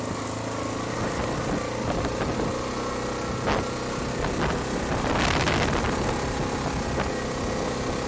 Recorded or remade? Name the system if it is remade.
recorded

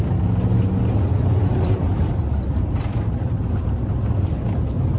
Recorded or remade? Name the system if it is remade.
recorded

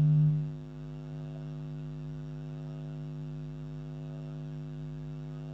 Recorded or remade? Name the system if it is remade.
recorded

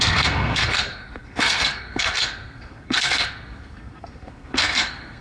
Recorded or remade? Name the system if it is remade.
remade, codec, SNAC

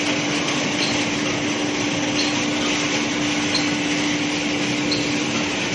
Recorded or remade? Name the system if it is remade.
recorded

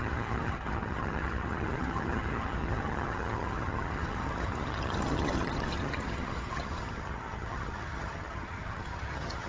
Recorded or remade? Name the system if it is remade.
remade, vocoder, HiFi-GAN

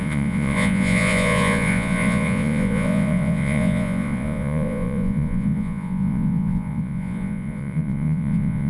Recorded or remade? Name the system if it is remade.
remade, vocoder, Vocos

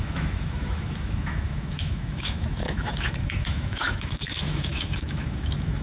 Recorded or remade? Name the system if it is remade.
remade, autoencoder, DAC-VAE